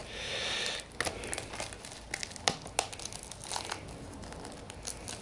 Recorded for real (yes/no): yes